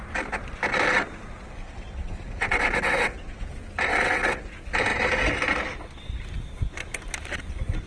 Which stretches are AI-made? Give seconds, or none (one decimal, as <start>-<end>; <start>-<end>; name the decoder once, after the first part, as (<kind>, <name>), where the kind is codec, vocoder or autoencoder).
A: 1.6-3.5 (vocoder, WaveNeXt); 3.9-4.5

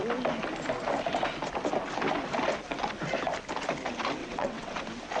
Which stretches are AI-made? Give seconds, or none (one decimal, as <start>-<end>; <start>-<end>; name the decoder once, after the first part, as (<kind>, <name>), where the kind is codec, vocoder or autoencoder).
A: 4.2-4.8 (vocoder, WaveNeXt)